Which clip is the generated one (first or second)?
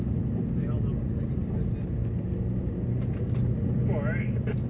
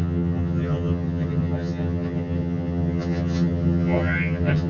second